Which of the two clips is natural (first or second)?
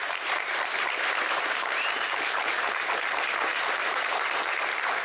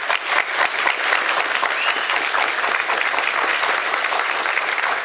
second